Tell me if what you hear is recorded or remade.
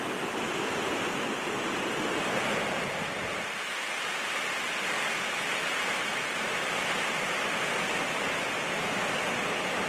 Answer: recorded